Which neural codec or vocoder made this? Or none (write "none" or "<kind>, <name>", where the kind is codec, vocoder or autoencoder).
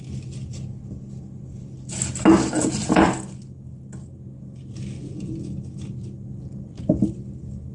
none